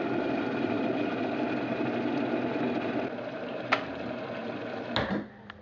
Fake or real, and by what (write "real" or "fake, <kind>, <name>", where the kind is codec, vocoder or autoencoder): real